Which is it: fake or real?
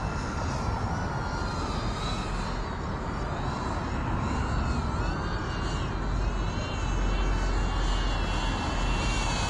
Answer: real